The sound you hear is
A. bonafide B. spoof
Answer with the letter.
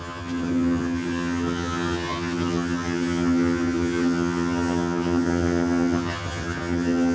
B